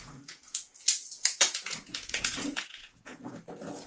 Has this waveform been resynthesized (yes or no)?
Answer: yes